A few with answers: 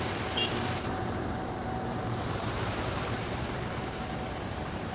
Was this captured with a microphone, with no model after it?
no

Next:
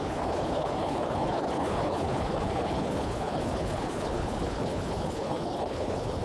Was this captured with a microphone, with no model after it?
no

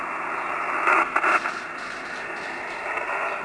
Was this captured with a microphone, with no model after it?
yes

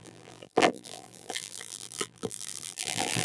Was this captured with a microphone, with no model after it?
no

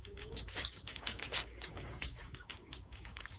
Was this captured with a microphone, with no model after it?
no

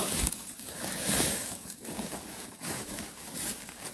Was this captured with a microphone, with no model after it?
no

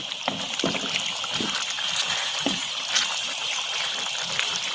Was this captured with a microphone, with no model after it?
yes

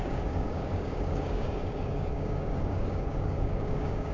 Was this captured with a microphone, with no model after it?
no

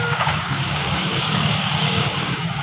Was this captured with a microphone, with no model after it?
no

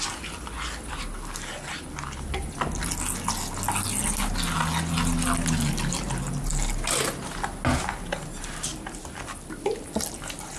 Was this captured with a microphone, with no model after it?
yes